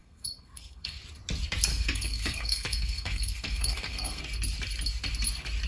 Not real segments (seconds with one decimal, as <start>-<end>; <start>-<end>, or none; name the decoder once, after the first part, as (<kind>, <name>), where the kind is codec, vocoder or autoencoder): 0.0-1.0 (codec, SNAC); 1.7-4.2